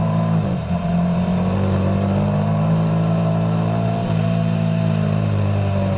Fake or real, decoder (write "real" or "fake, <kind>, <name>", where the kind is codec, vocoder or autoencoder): fake, vocoder, BigVGAN v2